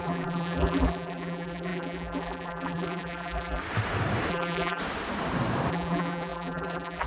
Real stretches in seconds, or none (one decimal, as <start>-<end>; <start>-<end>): 3.6-4.3; 4.8-5.7